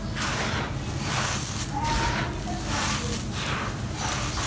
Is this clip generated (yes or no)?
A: no